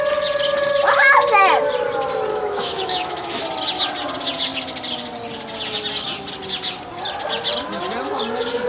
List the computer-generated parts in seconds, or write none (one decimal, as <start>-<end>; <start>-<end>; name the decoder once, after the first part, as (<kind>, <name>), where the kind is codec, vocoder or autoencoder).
2.3-3.4 (autoencoder, DAC-VAE)